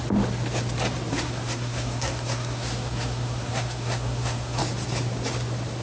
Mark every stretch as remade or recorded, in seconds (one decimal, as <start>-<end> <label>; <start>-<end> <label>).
0.0-1.1 recorded; 1.1-4.6 remade; 4.6-5.8 recorded